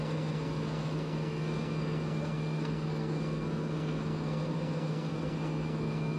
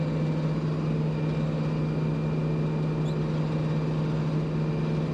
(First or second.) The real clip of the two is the second